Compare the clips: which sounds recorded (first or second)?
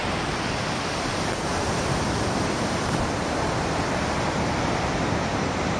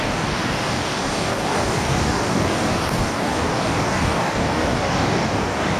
first